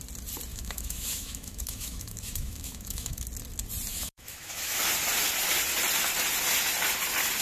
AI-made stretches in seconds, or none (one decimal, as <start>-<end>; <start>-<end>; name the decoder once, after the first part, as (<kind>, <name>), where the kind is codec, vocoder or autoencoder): 0.5-3.2 (autoencoder, DAC-VAE); 3.9-4.8